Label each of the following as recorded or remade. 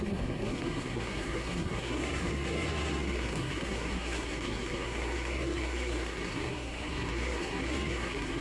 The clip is remade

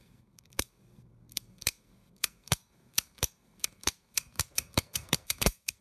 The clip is remade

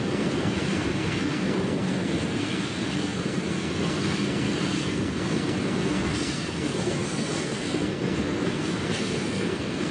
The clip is remade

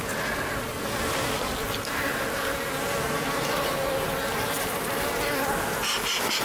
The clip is recorded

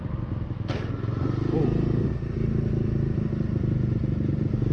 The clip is recorded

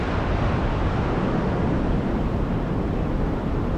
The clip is recorded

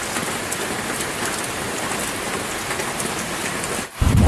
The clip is recorded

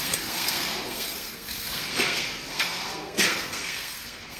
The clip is remade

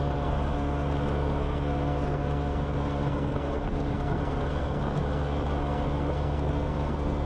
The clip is remade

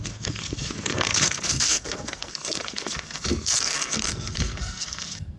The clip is remade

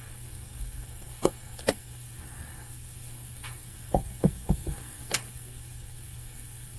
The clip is remade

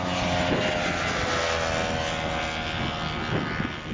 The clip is recorded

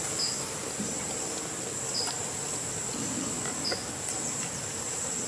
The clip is recorded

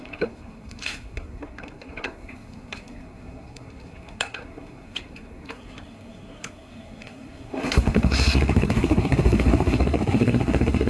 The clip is remade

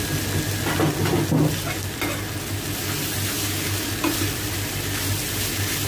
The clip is recorded